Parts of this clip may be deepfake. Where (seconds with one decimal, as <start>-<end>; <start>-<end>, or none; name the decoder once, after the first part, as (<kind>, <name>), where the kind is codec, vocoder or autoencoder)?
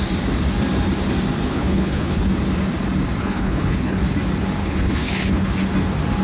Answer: 1.5-2.2 (codec, HILCodec); 3.2-4.0; 4.6-5.5